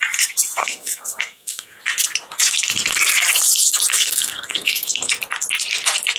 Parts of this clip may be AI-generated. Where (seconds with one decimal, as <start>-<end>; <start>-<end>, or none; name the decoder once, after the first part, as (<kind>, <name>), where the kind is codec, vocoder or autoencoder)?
0.6-1.8 (codec, SNAC); 3.9-5.1